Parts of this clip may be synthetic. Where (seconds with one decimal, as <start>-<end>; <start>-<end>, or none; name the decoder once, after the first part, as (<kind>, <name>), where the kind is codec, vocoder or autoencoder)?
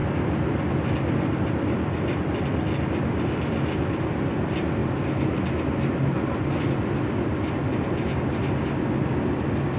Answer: none